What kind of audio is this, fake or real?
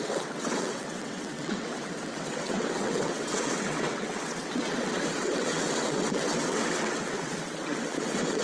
fake